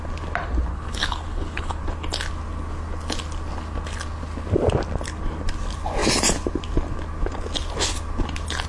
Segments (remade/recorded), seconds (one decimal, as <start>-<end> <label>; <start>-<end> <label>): 0.0-0.7 recorded; 0.7-1.8 remade; 1.8-8.7 recorded